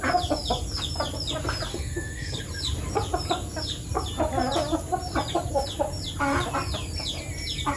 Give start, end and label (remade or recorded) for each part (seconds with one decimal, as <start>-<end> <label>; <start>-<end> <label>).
0.0-1.7 recorded; 1.7-2.4 remade; 2.4-7.8 recorded